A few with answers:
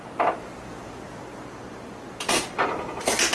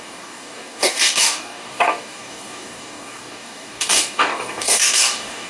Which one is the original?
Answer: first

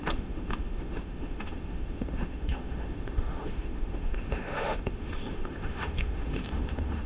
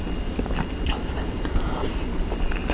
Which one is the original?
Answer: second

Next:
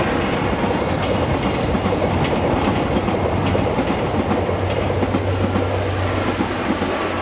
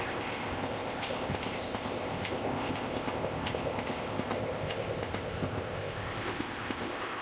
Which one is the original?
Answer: first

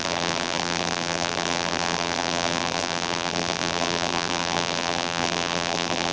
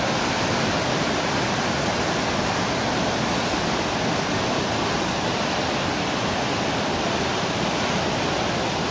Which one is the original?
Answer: second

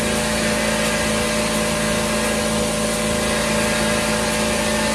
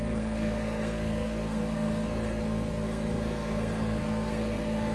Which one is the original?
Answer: first